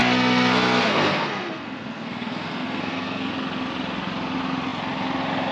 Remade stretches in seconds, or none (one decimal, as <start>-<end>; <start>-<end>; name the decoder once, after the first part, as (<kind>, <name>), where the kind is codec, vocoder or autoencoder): 0.0-3.3 (codec, SNAC)